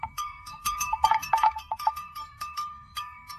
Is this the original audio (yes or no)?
no